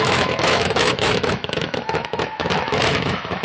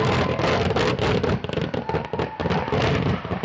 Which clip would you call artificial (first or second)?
first